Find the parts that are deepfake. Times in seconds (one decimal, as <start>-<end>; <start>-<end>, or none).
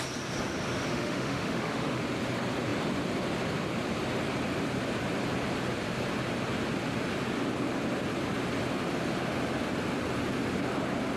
0.9-2.0